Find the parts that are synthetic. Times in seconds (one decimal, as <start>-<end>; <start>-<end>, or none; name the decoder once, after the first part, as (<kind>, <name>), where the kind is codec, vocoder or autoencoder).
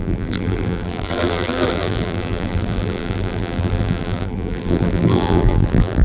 0.0-6.0 (vocoder, BigVGAN v2)